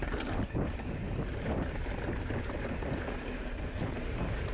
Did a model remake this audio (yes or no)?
no